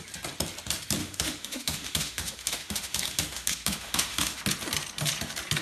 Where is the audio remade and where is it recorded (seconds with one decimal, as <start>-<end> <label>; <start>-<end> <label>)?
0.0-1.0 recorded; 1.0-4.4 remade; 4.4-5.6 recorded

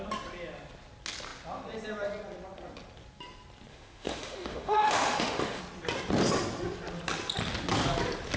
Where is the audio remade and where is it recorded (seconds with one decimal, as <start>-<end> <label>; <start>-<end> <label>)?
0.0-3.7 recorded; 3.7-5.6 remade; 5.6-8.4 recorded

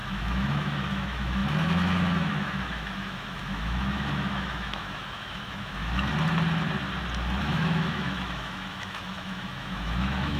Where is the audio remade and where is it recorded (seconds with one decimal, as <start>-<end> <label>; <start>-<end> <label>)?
0.0-6.1 remade; 6.1-7.4 recorded; 7.4-10.4 remade

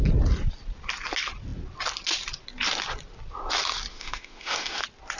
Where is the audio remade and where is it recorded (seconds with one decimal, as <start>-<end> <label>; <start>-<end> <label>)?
0.0-3.9 recorded; 3.9-4.8 remade; 4.8-5.2 recorded

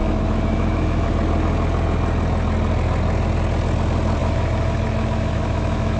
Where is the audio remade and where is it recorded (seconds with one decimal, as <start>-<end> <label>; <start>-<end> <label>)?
0.0-1.1 remade; 1.1-4.2 recorded; 4.2-6.0 remade